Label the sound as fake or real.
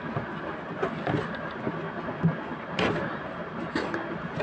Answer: real